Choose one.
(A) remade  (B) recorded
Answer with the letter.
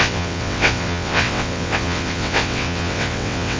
A